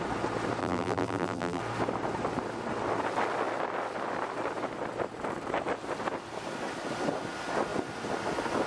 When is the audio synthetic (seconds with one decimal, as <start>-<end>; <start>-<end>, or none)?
0.6-1.6